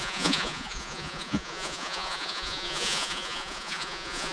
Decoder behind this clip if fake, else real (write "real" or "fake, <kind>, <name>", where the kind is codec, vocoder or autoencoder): fake, vocoder, Vocos